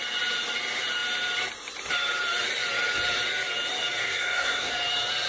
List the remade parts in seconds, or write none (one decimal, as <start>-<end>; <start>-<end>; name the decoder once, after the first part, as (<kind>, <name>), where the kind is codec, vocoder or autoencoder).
4.0-4.7 (codec, SNAC)